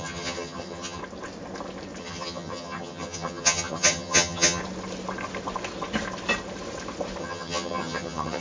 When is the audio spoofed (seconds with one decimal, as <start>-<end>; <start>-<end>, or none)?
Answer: 0.0-1.0; 2.0-4.6; 7.2-8.4